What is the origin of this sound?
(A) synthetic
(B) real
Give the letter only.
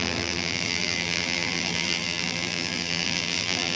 A